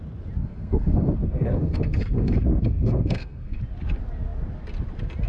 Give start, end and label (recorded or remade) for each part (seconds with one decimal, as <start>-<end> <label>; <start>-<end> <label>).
0.0-0.4 recorded; 0.4-3.6 remade; 3.6-5.3 recorded